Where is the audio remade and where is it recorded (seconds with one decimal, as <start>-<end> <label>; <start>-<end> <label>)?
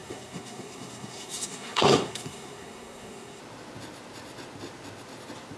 0.0-3.4 remade; 3.4-5.6 recorded